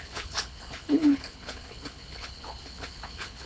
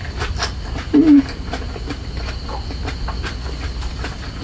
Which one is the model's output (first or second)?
first